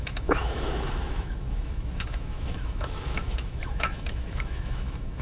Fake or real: fake